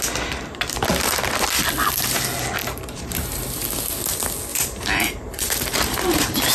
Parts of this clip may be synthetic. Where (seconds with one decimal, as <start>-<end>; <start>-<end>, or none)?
2.6-3.4; 4.5-6.5